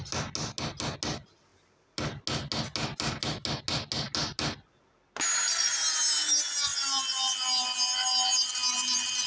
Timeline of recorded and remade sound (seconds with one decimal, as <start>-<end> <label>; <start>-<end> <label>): 0.0-9.3 recorded